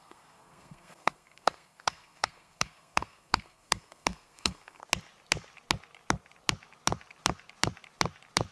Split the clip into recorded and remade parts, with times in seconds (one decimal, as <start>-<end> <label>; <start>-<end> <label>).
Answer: 0.0-4.8 remade; 4.8-8.5 recorded